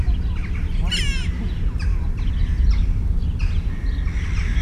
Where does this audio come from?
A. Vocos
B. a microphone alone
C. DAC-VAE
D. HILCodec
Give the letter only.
B